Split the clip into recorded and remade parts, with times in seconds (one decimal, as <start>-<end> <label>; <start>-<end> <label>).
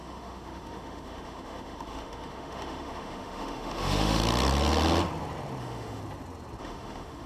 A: 0.0-4.2 remade; 4.2-5.6 recorded; 5.6-6.0 remade; 6.0-6.6 recorded; 6.6-7.3 remade